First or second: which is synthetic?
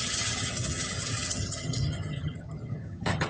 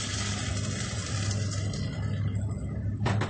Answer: first